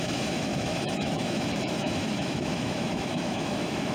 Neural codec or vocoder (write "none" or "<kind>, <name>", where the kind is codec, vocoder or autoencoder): autoencoder, DAC-VAE